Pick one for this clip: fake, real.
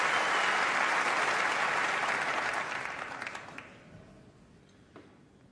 real